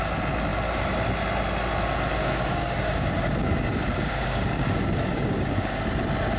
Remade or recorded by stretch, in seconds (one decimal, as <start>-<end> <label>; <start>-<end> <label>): 0.0-2.2 recorded; 2.2-5.8 remade; 5.8-6.4 recorded